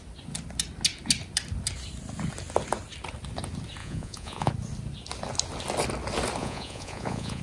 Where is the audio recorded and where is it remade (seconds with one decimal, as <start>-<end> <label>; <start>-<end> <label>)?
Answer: 0.0-3.8 recorded; 3.8-4.5 remade; 4.5-6.4 recorded; 6.4-7.4 remade